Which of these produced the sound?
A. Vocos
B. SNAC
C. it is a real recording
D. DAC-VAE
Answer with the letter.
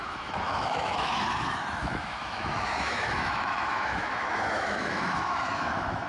D